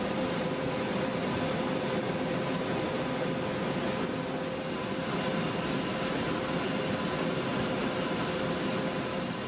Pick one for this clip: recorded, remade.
recorded